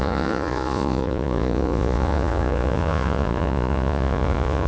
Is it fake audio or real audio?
fake